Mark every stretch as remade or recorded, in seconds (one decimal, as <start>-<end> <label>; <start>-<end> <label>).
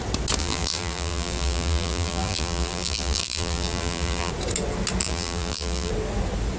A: 0.0-0.4 recorded; 0.4-4.3 remade; 4.3-5.0 recorded; 5.0-5.9 remade; 5.9-6.6 recorded